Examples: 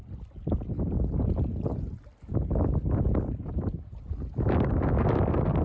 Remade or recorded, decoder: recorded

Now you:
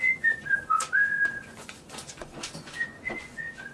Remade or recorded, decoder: remade, vocoder, Vocos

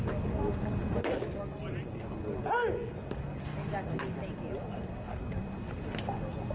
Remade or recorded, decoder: recorded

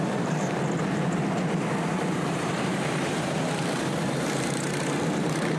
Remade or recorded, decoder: remade, vocoder, BigVGAN v2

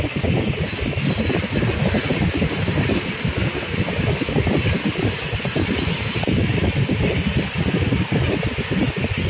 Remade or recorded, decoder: recorded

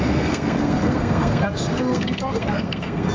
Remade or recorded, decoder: remade, codec, SNAC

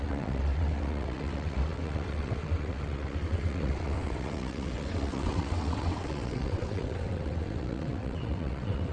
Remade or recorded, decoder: remade, vocoder, WaveNeXt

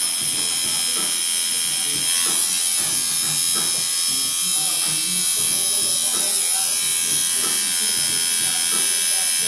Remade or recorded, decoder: recorded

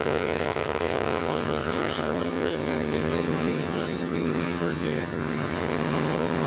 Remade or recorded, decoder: remade, vocoder, HiFi-GAN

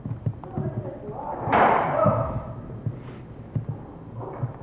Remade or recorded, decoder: recorded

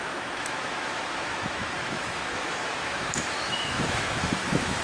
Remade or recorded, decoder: remade, autoencoder, DAC-VAE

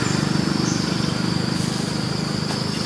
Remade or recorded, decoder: recorded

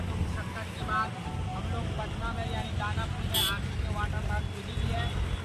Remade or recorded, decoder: recorded